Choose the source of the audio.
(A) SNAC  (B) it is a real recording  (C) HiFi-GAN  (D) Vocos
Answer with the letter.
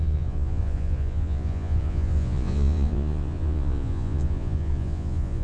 D